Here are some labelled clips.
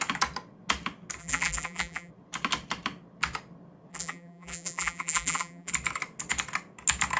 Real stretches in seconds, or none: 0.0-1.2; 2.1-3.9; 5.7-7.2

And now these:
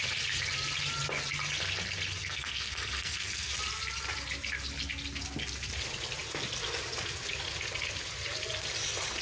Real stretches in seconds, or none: 0.0-2.2; 3.5-9.2

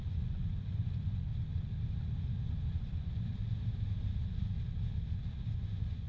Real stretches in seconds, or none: 1.3-2.9; 3.3-5.6

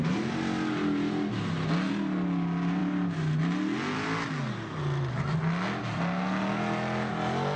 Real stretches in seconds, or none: 0.0-7.6

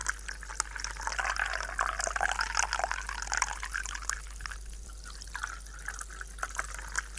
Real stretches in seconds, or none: 0.0-7.2